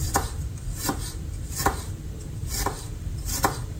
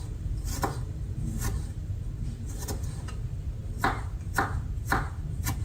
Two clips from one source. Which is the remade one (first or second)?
first